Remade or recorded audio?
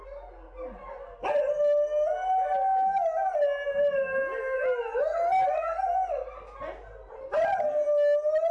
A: recorded